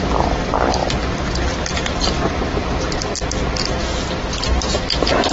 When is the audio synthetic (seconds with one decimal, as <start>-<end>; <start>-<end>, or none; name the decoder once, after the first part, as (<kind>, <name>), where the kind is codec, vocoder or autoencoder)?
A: none